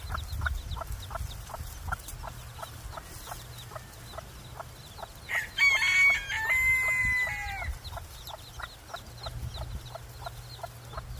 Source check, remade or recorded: recorded